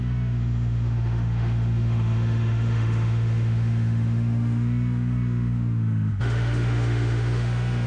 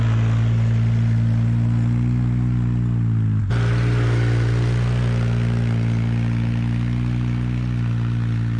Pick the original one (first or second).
second